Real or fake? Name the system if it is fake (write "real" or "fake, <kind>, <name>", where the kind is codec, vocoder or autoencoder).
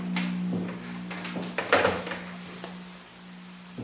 real